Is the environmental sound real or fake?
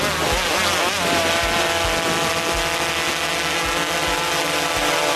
real